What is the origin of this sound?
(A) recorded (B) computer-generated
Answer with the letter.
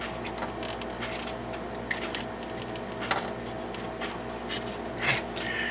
A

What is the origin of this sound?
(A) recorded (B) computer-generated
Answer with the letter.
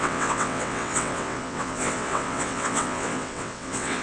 B